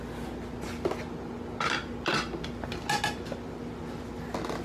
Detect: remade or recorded recorded